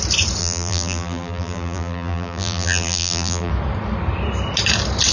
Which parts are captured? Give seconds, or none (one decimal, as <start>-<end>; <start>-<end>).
0.0-0.4; 3.5-5.1